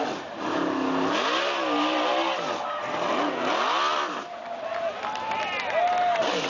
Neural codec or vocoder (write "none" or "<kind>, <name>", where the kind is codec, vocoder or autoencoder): none